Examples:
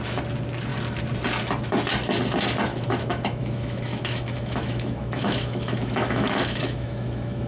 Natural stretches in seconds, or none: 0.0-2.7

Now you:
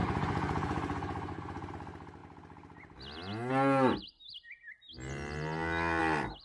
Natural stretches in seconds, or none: 1.7-6.4

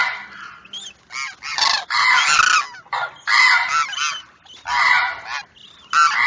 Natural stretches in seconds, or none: 0.0-6.3

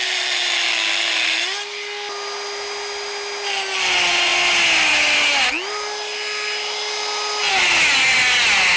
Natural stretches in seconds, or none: 0.0-8.8